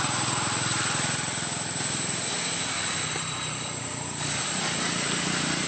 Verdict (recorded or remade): recorded